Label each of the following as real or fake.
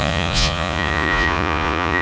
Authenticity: fake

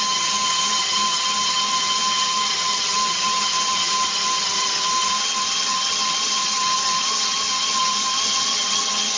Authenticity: fake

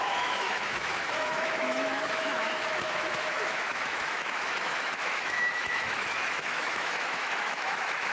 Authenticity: fake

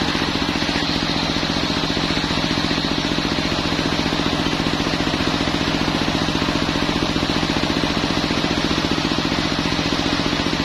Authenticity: real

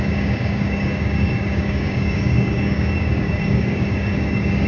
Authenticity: fake